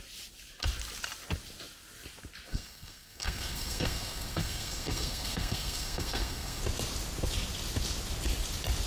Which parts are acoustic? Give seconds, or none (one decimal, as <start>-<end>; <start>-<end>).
0.0-2.5; 6.6-8.9